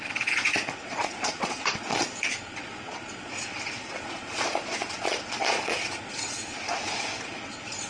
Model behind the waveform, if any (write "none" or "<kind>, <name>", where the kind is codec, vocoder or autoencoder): vocoder, Vocos